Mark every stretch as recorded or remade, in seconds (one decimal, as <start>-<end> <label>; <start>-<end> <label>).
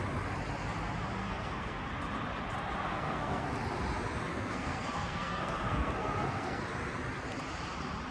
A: 0.0-1.2 recorded; 1.2-1.9 remade; 1.9-2.9 recorded; 2.9-3.5 remade; 3.5-4.3 recorded; 4.3-6.6 remade; 6.6-8.1 recorded